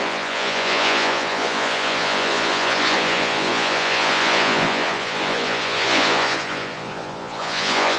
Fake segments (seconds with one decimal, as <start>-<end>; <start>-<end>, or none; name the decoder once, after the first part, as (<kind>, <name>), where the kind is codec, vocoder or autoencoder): 0.0-8.0 (vocoder, Vocos)